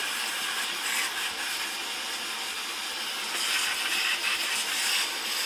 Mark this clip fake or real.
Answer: real